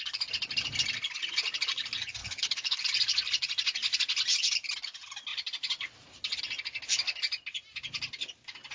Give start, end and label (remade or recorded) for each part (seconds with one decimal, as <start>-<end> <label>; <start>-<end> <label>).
0.0-2.2 recorded; 2.2-2.8 remade; 2.8-8.7 recorded